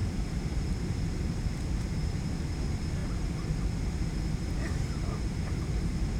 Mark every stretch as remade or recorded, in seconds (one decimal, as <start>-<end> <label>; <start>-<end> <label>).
0.0-1.5 remade; 1.5-3.0 recorded; 3.0-3.8 remade; 3.8-6.2 recorded